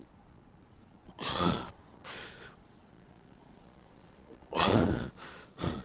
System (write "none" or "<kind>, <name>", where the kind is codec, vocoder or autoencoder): vocoder, Vocos